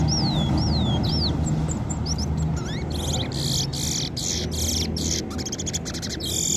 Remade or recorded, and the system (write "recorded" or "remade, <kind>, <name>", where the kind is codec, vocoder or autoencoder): recorded